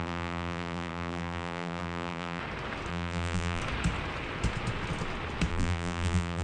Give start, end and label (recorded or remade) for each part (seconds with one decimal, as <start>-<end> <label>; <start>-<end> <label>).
0.0-2.4 remade; 2.4-2.9 recorded; 2.9-3.6 remade; 3.6-5.5 recorded; 5.5-6.4 remade